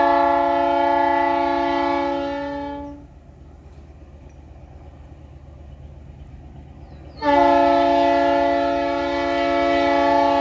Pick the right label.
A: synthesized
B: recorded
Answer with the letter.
B